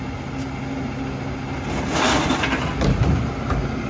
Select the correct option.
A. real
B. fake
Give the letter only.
A